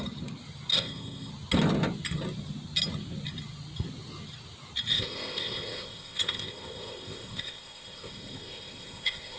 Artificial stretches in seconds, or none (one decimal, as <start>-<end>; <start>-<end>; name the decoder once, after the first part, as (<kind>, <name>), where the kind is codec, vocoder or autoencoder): 0.7-1.3 (codec, ZipCodec); 4.9-9.4